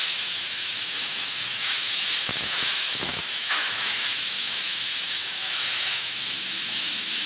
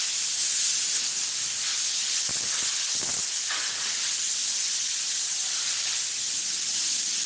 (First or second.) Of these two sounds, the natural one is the second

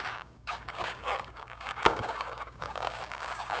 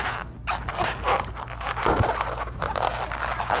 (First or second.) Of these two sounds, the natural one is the second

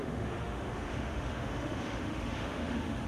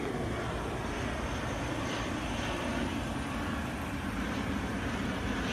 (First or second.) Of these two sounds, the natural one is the second